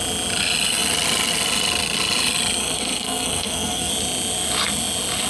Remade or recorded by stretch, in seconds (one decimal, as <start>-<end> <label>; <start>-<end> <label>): 0.0-2.6 recorded; 2.6-3.9 remade; 3.9-5.3 recorded